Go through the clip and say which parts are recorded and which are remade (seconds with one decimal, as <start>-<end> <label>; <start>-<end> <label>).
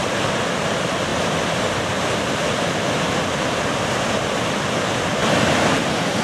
0.0-6.2 remade